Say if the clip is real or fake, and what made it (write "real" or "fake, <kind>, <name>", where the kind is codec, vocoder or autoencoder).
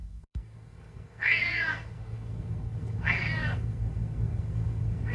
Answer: fake, codec, SNAC